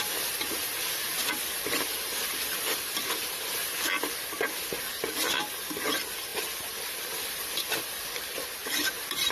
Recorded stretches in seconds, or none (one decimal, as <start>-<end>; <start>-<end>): 0.0-9.3